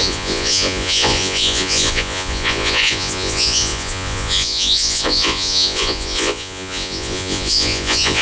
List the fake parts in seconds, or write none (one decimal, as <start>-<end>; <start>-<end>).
0.0-8.2